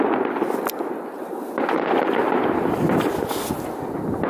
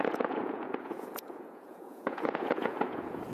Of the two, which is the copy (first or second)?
second